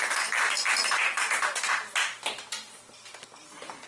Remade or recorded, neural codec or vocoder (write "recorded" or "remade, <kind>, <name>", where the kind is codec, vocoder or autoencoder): recorded